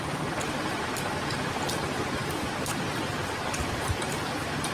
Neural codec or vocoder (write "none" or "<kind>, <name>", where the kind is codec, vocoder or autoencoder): none